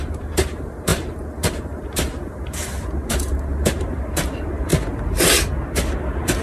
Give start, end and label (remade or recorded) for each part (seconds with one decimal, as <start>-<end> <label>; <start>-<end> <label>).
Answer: 0.0-4.7 remade; 4.7-6.4 recorded